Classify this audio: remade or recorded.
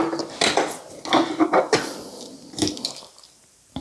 recorded